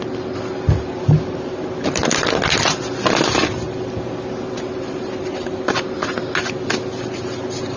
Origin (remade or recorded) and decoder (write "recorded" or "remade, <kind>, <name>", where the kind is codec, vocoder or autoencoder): recorded